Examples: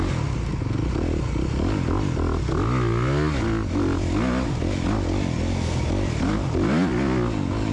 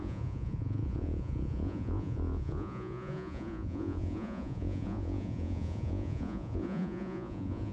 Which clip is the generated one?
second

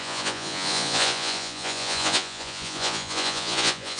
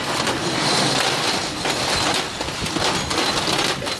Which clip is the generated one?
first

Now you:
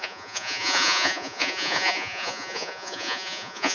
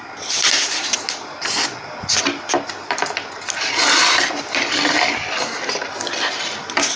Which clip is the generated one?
first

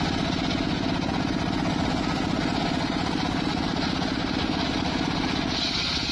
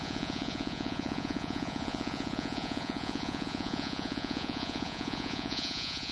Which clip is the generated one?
second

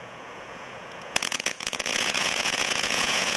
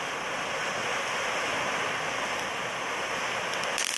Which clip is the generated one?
first